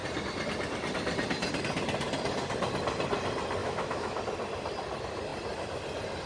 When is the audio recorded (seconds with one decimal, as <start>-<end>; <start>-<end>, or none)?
0.0-3.6; 4.2-6.3